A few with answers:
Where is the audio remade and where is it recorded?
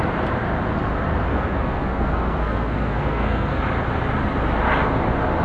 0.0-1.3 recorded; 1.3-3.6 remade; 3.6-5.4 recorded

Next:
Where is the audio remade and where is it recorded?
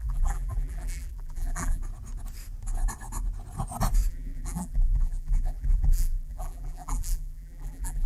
0.0-1.8 remade; 1.8-4.1 recorded; 4.1-8.1 remade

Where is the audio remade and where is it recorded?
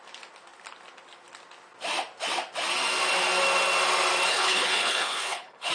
0.0-4.3 recorded; 4.3-5.7 remade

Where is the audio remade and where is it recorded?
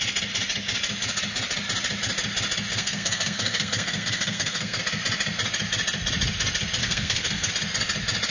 0.0-2.7 recorded; 2.7-4.8 remade; 4.8-6.8 recorded; 6.8-7.5 remade; 7.5-8.3 recorded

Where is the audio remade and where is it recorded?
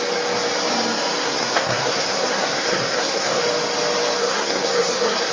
0.0-1.2 recorded; 1.2-3.4 remade; 3.4-4.2 recorded; 4.2-5.3 remade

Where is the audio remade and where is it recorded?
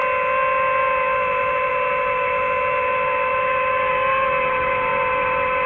0.0-3.3 recorded; 3.3-3.9 remade; 3.9-5.7 recorded